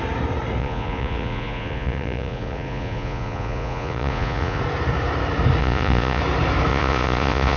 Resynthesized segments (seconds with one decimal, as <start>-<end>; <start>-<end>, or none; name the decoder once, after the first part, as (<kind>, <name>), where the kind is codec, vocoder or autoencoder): 0.6-4.6 (vocoder, Vocos); 5.6-6.2; 6.7-7.6